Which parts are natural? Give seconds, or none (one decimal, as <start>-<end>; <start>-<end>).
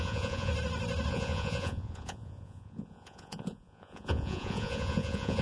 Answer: 0.5-1.1